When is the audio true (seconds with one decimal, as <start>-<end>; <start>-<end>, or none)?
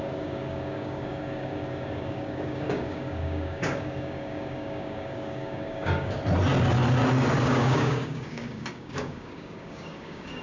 6.2-7.4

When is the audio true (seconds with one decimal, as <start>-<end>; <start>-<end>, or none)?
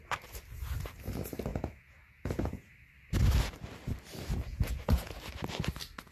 0.0-1.5; 2.7-4.5; 5.2-6.1